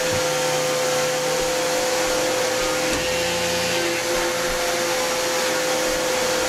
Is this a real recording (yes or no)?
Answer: yes